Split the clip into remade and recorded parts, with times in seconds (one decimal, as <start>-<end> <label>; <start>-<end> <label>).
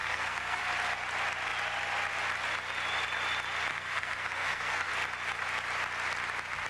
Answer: 0.0-0.6 remade; 0.6-3.7 recorded; 3.7-4.9 remade; 4.9-6.7 recorded